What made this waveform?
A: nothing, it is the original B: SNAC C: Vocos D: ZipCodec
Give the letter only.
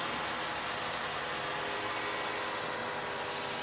A